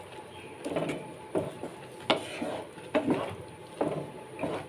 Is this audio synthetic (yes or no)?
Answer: no